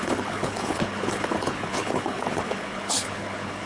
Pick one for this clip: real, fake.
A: fake